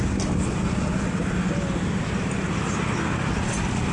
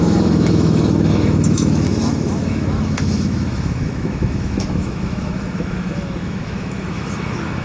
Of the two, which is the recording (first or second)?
first